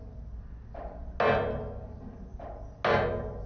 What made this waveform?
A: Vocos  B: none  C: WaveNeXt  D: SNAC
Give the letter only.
B